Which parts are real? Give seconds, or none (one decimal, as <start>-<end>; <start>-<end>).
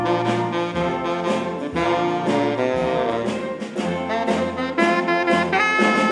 0.0-6.1